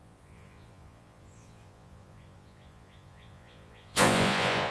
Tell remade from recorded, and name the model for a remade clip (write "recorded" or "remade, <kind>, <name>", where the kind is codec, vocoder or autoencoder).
remade, vocoder, Vocos